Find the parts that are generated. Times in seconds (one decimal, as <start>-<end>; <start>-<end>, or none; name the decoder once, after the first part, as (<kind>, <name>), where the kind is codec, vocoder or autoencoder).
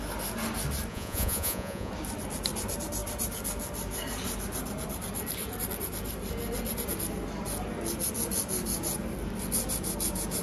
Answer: 0.9-1.9 (vocoder, Vocos)